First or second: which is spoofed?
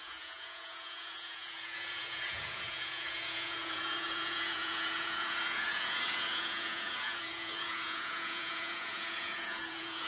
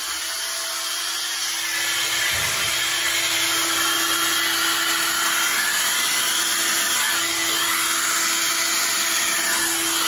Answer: first